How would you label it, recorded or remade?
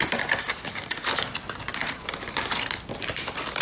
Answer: remade